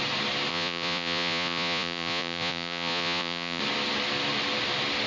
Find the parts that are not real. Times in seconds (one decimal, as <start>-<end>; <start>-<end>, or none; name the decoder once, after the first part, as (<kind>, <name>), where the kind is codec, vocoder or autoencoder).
0.5-3.6 (vocoder, Vocos)